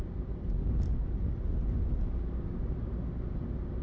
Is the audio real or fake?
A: real